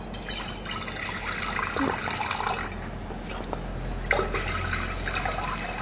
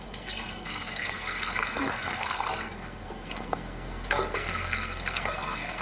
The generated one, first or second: second